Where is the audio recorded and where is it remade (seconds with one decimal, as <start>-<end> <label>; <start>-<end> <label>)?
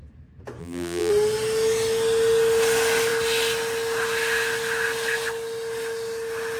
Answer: 0.0-0.6 recorded; 0.6-1.1 remade; 1.1-6.6 recorded